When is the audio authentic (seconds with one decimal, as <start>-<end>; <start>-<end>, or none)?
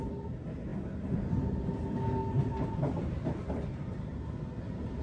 0.0-2.2; 4.2-5.0